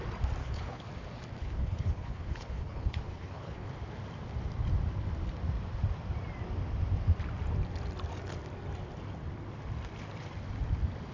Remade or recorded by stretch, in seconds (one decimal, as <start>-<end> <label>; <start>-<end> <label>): 0.0-0.4 recorded; 0.4-0.9 remade; 0.9-1.4 recorded; 1.4-3.7 remade; 3.7-11.1 recorded

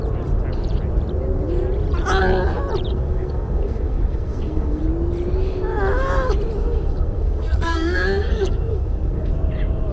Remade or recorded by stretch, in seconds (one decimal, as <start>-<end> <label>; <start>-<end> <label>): 0.0-2.9 recorded; 2.9-4.8 remade; 4.8-6.6 recorded; 6.6-9.3 remade; 9.3-9.9 recorded

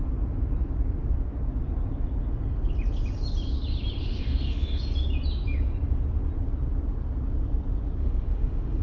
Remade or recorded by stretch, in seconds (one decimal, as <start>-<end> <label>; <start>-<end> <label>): 0.0-4.0 recorded; 4.0-4.8 remade; 4.8-8.0 recorded; 8.0-8.8 remade

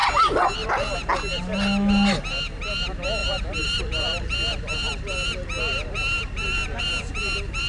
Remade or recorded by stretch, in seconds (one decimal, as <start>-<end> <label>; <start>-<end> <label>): 0.0-7.7 recorded

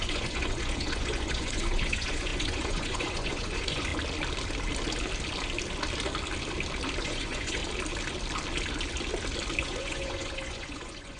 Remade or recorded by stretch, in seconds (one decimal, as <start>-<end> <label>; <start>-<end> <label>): 0.0-3.9 remade; 3.9-7.0 recorded; 7.0-7.6 remade; 7.6-9.6 recorded; 9.6-11.2 remade

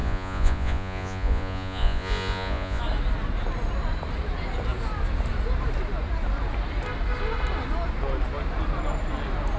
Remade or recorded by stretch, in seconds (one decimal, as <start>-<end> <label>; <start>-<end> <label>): 0.0-2.8 remade; 2.8-9.6 recorded

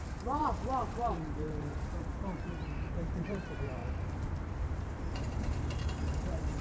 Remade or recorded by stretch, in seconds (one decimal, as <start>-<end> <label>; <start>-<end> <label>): 0.0-3.8 remade; 3.8-4.4 recorded; 4.4-6.6 remade